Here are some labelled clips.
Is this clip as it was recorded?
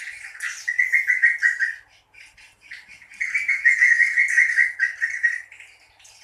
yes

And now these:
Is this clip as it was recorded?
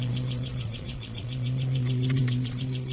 no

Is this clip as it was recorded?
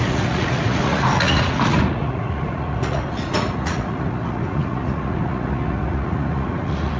no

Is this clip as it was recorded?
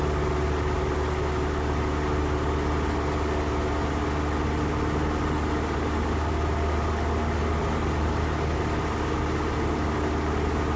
yes